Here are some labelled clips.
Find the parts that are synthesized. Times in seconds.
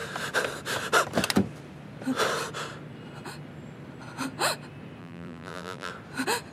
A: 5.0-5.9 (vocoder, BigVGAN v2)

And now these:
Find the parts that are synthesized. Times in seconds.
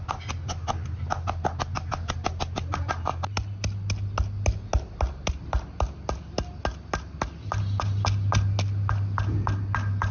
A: none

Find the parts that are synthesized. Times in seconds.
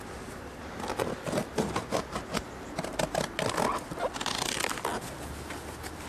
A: none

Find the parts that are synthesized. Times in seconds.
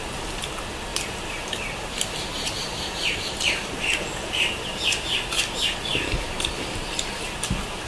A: 0.9-5.4 (vocoder, BigVGAN v2)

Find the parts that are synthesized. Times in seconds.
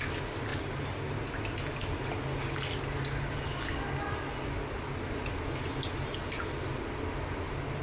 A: none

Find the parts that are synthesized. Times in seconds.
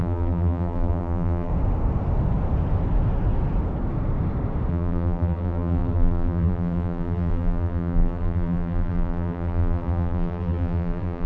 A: 0.0-1.5 (vocoder, BigVGAN v2); 4.7-11.3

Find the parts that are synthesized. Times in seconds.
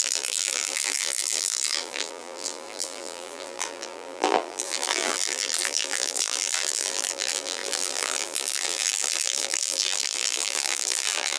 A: 0.0-11.4 (vocoder, BigVGAN v2)